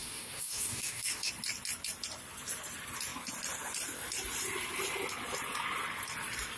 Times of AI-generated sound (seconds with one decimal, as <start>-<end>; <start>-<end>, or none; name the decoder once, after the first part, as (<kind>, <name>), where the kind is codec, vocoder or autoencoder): 0.0-1.3 (codec, DAC)

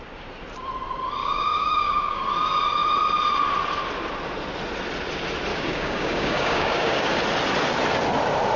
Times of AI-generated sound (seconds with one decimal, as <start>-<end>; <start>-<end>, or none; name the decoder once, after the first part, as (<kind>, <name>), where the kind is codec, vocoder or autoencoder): 1.2-2.2 (codec, DAC); 5.5-7.1

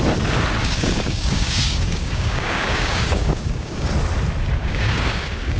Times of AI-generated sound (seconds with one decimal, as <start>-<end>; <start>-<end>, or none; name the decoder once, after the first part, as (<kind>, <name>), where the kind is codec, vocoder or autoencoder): 0.6-3.9 (codec, DAC); 4.6-5.6

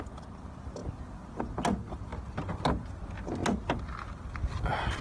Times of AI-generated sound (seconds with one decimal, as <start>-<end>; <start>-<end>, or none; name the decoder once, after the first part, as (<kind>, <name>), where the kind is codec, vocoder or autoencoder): none

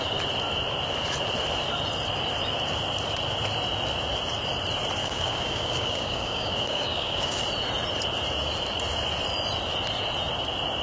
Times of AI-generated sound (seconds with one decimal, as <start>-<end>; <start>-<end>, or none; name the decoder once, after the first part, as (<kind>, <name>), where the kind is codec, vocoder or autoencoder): 5.0-7.4 (codec, DAC)

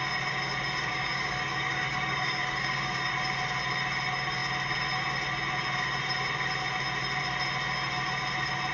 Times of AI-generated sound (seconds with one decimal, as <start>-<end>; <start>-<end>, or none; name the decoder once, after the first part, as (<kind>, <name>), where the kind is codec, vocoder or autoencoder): 0.9-3.1 (codec, DAC)

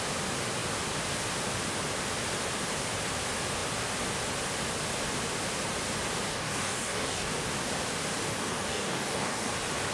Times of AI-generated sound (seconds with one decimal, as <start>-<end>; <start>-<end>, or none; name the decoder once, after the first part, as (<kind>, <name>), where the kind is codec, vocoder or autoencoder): 6.3-7.3 (codec, DAC); 8.3-9.5

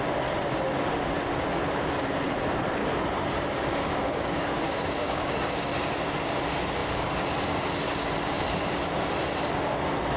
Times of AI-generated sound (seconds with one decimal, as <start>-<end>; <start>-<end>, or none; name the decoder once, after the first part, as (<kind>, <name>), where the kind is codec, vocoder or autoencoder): 4.0-5.7 (codec, DAC)